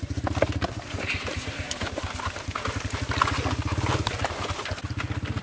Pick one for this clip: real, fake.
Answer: real